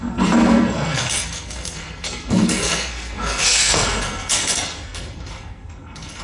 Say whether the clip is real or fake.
fake